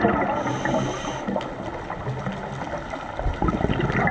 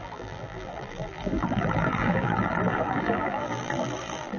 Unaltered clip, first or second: first